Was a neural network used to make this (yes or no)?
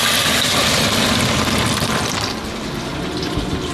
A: no